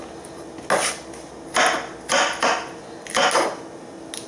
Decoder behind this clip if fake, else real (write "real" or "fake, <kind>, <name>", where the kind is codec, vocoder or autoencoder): real